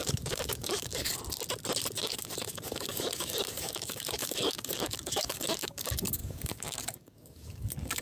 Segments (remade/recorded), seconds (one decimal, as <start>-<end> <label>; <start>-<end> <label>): 0.0-1.1 remade; 1.1-2.0 recorded; 2.0-8.0 remade